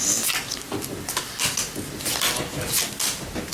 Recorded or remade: recorded